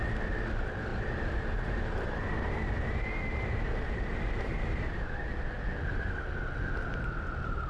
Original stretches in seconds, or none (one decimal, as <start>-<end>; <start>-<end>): 0.0-0.9; 5.5-7.7

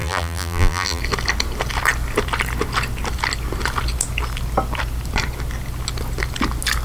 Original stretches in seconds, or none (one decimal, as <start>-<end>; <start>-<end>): 1.0-6.8

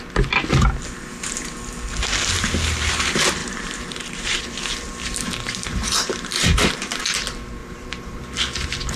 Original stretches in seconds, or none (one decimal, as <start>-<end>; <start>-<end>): 0.0-3.4; 4.4-5.7; 7.0-7.6; 8.2-9.0

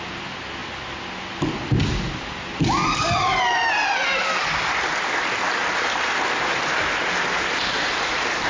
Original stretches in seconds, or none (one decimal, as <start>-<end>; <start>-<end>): 0.0-5.6